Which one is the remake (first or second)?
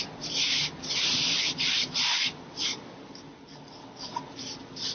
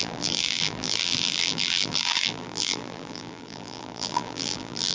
second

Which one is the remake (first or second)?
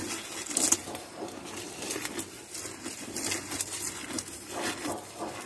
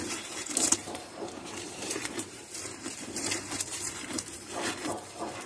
second